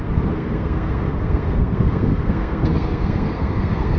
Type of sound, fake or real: fake